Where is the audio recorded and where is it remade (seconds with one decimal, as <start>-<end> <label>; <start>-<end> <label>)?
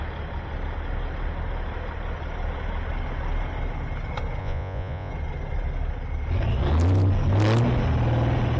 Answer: 0.0-4.4 recorded; 4.4-5.1 remade; 5.1-8.6 recorded